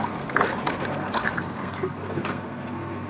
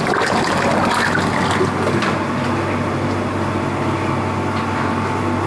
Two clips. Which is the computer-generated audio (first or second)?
first